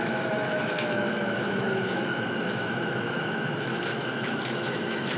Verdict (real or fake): fake